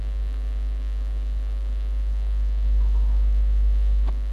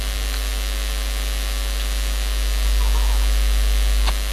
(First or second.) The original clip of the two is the second